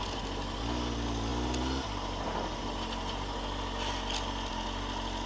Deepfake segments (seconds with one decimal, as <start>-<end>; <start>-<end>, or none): none